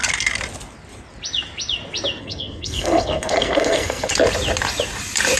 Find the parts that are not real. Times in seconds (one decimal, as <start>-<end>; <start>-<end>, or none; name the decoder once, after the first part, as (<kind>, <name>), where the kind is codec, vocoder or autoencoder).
2.2-4.1 (codec, SNAC)